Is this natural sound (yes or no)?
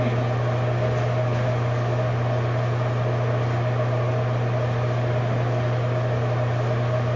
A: yes